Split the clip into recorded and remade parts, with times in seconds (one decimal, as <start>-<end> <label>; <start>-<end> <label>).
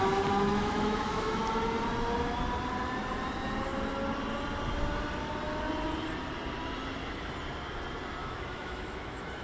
0.0-0.5 recorded; 0.5-1.4 remade; 1.4-8.2 recorded; 8.2-9.4 remade